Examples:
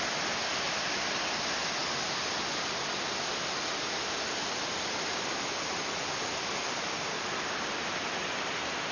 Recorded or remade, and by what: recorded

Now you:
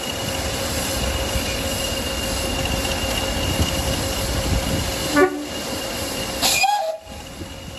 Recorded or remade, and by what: recorded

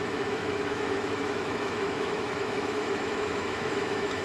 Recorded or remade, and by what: remade, autoencoder, DAC-VAE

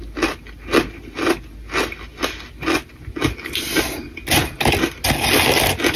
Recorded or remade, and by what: recorded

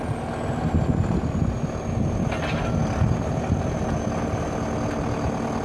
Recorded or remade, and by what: recorded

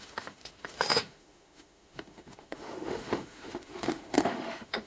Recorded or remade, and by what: remade, autoencoder, DAC-VAE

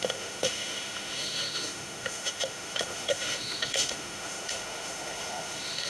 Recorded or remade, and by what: remade, autoencoder, DAC-VAE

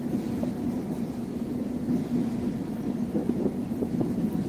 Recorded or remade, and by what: recorded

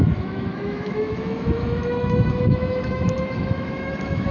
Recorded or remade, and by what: remade, autoencoder, DAC-VAE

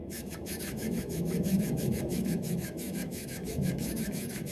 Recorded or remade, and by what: remade, autoencoder, DAC-VAE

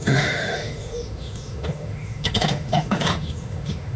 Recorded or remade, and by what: remade, autoencoder, DAC-VAE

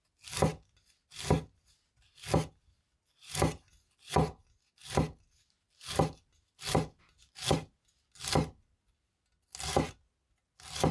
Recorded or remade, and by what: recorded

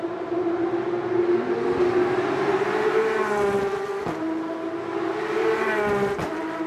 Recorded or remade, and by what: recorded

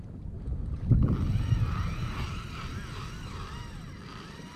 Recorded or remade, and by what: recorded